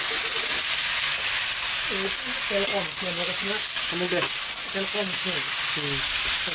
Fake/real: real